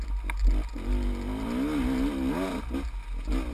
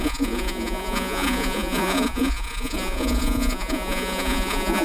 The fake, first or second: second